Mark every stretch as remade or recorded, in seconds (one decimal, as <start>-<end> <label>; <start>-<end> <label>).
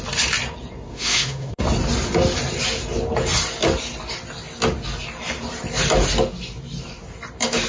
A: 0.0-0.9 recorded; 0.9-1.6 remade; 1.6-7.7 recorded